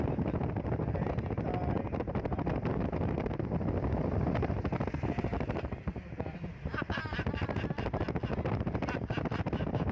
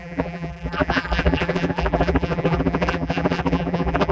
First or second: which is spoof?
second